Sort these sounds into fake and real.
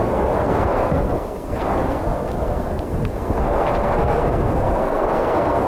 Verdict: fake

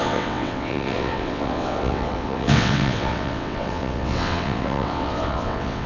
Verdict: fake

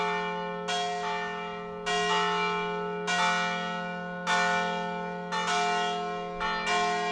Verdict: real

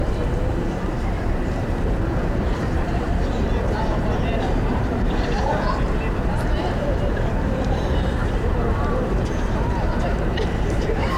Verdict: fake